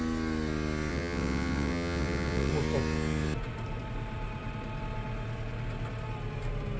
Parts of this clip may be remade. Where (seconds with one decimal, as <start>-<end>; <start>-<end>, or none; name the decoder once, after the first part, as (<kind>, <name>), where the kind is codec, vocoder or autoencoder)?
0.9-2.5 (vocoder, WaveNeXt)